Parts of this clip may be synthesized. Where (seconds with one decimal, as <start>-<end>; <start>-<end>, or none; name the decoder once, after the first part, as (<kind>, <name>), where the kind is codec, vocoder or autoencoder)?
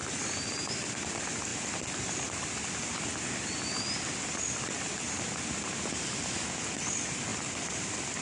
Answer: none